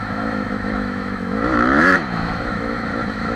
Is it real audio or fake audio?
fake